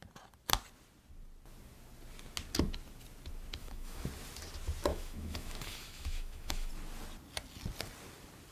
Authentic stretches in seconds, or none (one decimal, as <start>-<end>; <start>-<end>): 0.0-3.6; 4.1-4.9; 6.7-8.5